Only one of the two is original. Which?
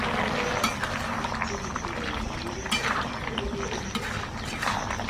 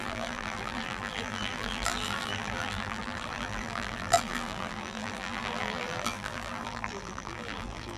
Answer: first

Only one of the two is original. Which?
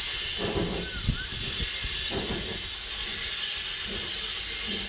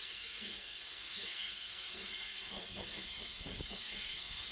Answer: first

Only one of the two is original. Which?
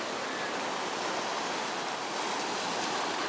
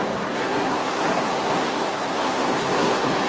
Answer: first